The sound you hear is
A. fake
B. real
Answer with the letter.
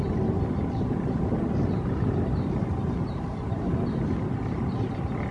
B